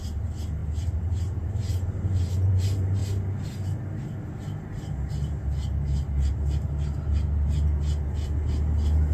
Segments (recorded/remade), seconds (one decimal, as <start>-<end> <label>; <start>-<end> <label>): 0.0-0.6 recorded; 0.6-2.5 remade; 2.5-9.1 recorded